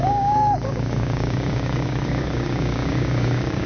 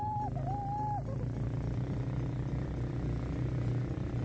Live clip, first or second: second